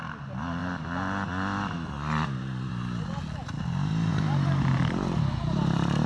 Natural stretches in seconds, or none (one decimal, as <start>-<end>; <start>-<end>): 0.0-4.1